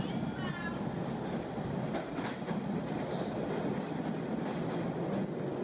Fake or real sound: real